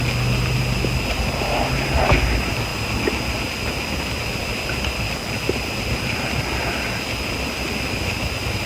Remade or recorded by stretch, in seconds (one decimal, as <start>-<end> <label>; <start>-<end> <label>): 0.0-8.7 recorded